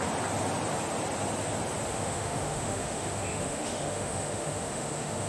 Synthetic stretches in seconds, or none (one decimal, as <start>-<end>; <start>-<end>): 1.9-5.3